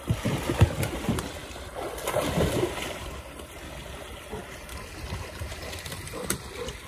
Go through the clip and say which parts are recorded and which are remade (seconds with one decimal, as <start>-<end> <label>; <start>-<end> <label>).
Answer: 0.0-6.9 recorded